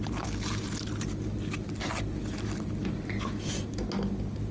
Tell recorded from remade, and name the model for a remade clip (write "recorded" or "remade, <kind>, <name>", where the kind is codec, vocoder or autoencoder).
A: recorded